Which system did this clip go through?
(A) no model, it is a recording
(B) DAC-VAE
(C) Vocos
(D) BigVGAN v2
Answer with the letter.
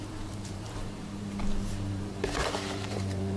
D